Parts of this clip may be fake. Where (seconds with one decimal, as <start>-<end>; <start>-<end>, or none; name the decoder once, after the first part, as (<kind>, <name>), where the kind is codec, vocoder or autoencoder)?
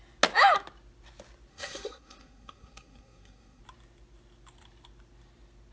1.5-3.6 (codec, SNAC)